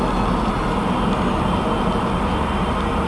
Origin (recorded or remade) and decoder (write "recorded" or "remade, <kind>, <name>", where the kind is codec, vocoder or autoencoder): recorded